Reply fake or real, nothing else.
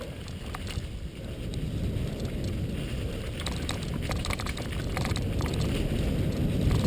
real